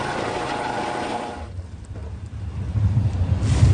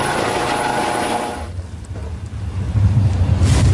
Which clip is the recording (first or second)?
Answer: second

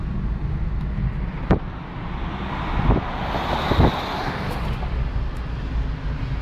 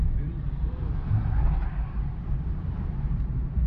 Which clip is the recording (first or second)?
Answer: first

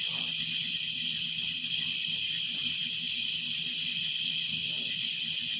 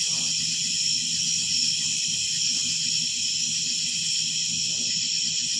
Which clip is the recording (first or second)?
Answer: second